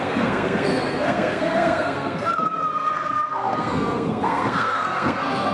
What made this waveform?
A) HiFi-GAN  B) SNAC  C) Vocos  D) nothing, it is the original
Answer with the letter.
B